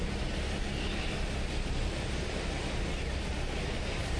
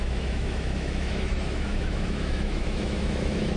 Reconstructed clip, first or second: second